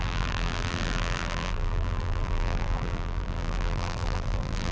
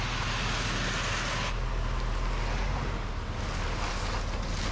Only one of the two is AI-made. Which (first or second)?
first